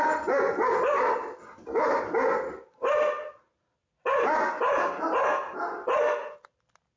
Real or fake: real